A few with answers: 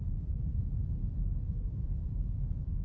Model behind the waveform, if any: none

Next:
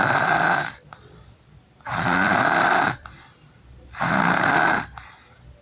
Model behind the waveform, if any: vocoder, BigVGAN v2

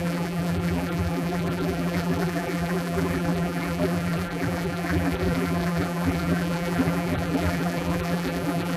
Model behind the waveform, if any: vocoder, BigVGAN v2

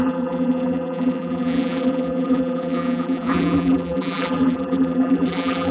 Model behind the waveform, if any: vocoder, BigVGAN v2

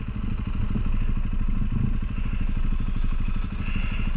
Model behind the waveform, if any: none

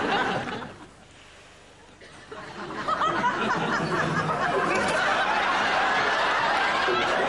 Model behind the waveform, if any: none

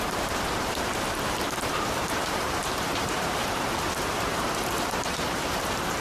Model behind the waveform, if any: vocoder, BigVGAN v2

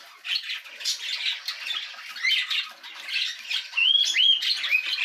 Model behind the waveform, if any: none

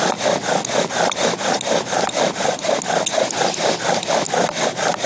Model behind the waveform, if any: none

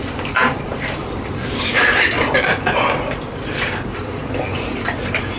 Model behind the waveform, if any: vocoder, BigVGAN v2